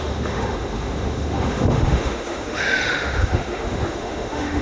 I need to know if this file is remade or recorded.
remade